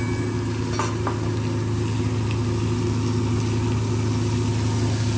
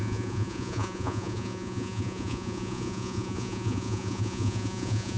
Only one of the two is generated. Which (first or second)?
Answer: second